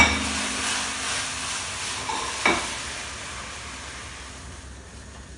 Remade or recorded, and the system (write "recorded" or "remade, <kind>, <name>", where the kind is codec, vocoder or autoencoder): recorded